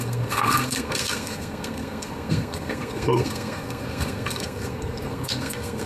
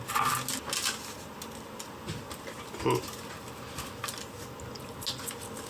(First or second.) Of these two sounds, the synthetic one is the first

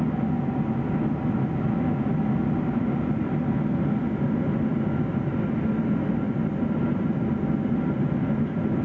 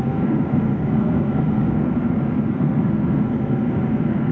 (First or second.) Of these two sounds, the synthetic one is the second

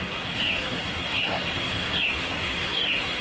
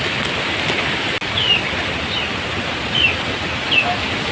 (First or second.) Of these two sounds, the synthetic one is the first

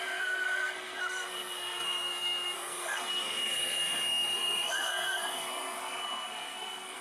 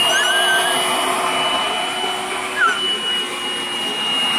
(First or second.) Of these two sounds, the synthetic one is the first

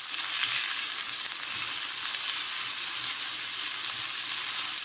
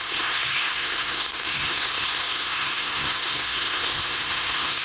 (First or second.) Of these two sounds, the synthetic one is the second